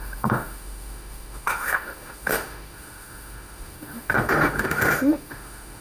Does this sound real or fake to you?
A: fake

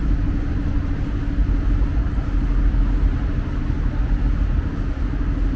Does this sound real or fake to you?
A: real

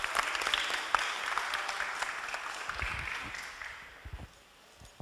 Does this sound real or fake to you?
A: real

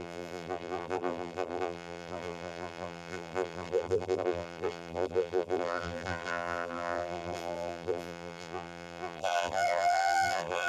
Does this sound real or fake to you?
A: fake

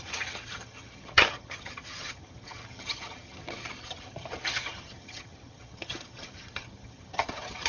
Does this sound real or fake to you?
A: fake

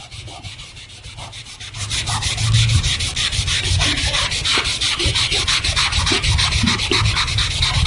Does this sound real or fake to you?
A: real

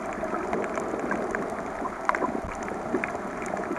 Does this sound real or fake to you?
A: real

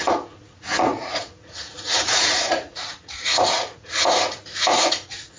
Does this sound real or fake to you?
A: fake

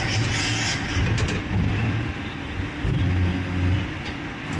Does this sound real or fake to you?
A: real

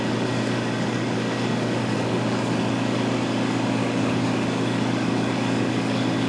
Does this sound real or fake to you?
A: fake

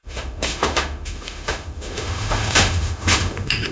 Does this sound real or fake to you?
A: fake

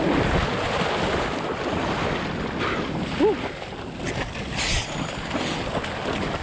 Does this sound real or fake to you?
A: real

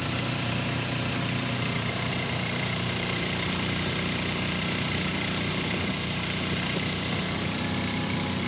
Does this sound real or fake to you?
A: fake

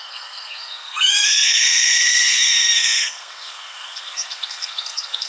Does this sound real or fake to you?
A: fake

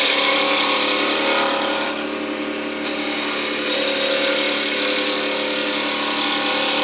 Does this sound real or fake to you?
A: real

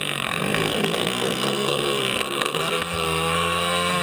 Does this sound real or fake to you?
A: fake